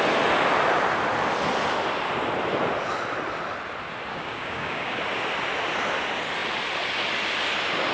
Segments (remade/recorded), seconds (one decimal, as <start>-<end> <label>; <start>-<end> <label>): 0.0-4.1 recorded; 4.1-5.0 remade; 5.0-7.9 recorded